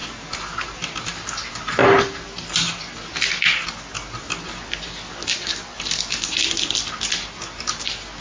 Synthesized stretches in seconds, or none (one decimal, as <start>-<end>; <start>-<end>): 0.0-3.0

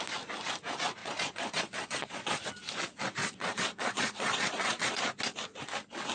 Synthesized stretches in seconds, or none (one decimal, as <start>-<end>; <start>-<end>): 1.0-2.4; 3.2-5.0

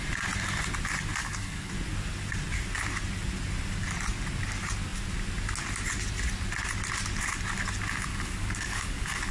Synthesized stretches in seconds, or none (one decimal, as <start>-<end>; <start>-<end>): 1.2-1.7; 8.1-9.3

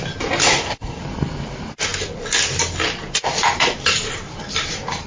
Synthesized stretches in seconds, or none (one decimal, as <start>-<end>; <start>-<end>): 0.4-1.0

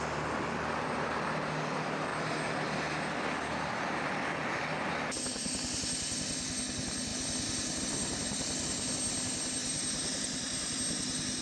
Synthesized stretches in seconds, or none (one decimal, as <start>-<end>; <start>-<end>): 9.6-10.8

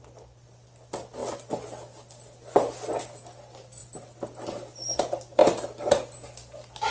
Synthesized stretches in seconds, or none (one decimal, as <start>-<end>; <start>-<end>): 5.4-5.9